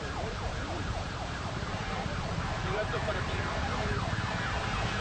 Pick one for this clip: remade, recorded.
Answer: remade